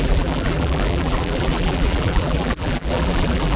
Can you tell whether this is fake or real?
fake